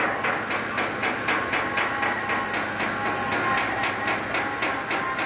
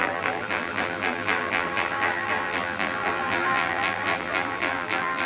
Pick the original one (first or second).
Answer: first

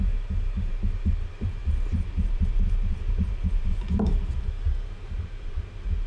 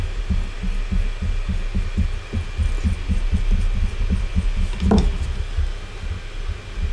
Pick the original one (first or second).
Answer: second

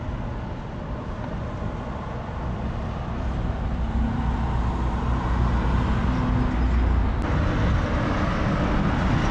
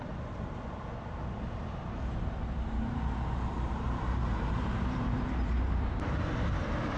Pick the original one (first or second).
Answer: first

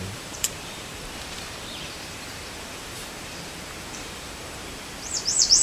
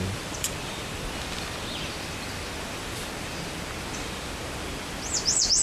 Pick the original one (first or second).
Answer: second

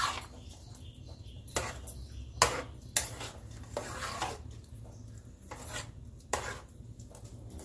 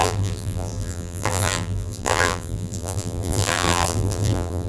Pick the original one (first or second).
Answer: first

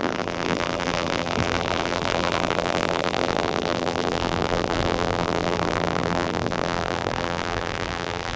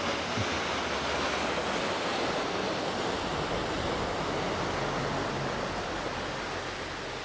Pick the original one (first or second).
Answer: second